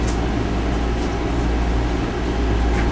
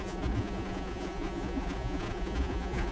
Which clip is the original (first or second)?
first